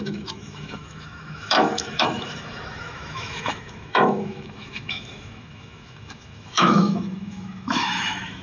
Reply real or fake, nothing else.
fake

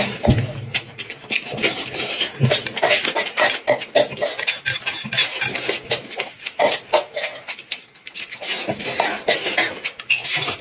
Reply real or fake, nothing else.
real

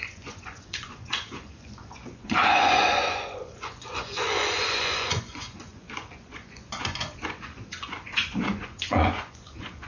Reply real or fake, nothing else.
fake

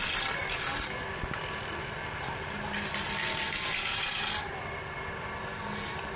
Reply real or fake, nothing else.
real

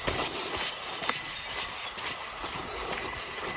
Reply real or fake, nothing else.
real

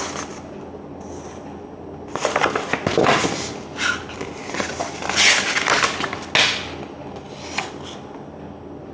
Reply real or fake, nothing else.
real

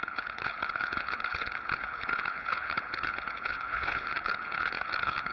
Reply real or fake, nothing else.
fake